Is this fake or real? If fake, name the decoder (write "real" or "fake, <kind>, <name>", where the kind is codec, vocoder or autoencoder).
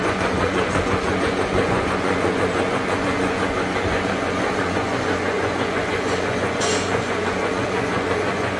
fake, vocoder, Vocos